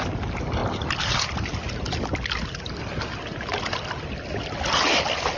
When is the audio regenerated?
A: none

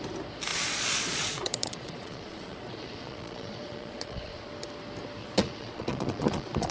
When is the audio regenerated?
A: 0.5-4.5 (vocoder, Vocos); 5.2-6.7

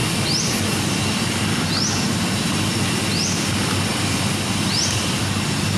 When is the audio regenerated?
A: none

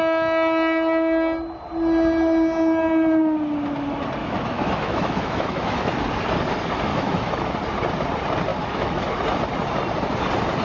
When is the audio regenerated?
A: 4.2-5.9 (autoencoder, DAC-VAE); 6.9-7.5; 8.5-9.1

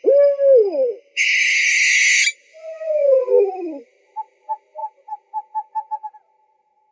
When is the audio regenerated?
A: 2.4-3.3 (vocoder, Vocos)

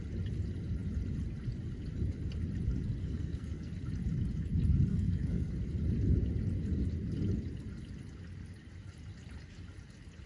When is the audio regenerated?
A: 3.0-3.7 (codec, SNAC); 4.9-5.5